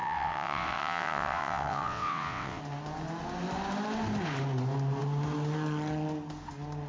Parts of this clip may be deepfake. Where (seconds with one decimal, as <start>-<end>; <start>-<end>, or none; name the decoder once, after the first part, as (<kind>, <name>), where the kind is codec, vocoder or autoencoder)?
0.0-2.6 (vocoder, WaveNeXt)